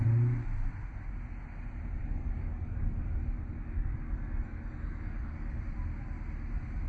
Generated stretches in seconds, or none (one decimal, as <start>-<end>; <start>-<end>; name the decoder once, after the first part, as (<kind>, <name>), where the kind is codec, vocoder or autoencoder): 2.0-5.6 (codec, DAC)